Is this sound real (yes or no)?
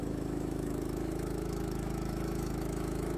no